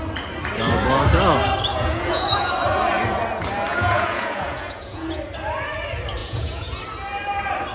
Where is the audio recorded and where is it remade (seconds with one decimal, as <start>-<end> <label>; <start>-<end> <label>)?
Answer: 0.0-1.7 recorded; 1.7-2.5 remade; 2.5-3.7 recorded; 3.7-5.2 remade; 5.2-6.2 recorded; 6.2-6.8 remade; 6.8-7.7 recorded